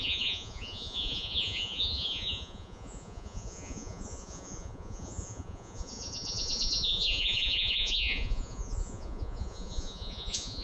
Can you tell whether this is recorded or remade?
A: remade